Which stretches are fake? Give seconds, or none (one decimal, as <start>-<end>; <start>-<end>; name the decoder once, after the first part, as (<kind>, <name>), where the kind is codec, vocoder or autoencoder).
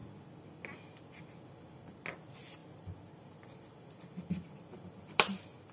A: none